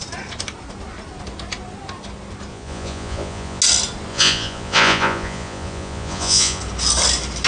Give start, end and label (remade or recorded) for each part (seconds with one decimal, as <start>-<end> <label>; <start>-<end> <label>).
0.0-2.5 recorded; 2.5-3.6 remade; 3.6-4.1 recorded; 4.1-6.6 remade; 6.6-7.5 recorded

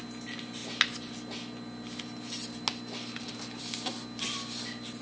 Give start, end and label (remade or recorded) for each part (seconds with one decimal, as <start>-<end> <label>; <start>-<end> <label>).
0.0-5.0 recorded